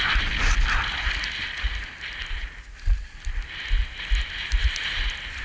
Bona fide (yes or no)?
yes